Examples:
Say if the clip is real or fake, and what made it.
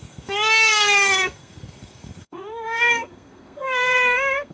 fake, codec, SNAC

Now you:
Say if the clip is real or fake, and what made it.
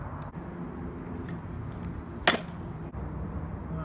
real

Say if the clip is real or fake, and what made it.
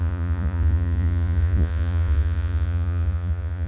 fake, vocoder, Vocos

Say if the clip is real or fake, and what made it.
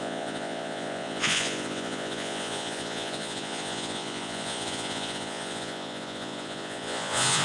fake, vocoder, Vocos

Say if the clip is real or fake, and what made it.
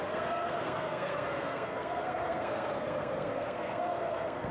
fake, codec, SNAC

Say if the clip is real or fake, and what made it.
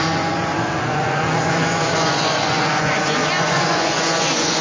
fake, vocoder, Vocos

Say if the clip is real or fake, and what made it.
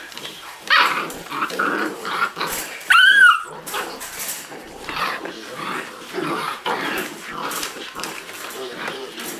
fake, vocoder, BigVGAN v2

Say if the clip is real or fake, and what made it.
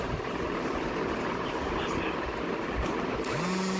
real